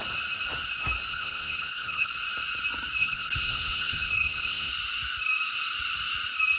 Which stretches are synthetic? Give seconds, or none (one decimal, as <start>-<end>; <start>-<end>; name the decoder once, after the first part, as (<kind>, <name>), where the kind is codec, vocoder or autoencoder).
1.1-2.1 (codec, HILCodec); 3.0-4.7